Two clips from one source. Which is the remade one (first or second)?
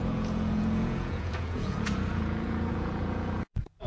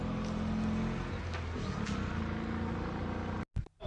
first